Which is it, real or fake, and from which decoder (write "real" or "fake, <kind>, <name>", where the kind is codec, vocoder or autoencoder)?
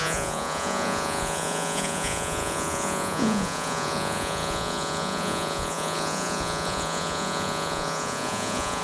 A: fake, vocoder, Vocos